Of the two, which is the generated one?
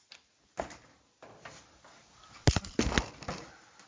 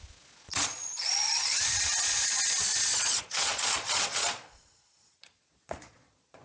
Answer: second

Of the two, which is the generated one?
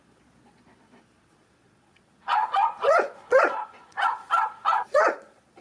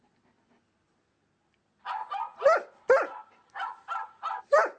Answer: first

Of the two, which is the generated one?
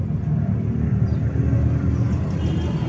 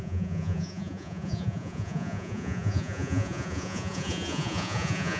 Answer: second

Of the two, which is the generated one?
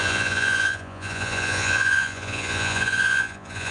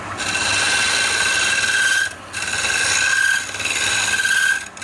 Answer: first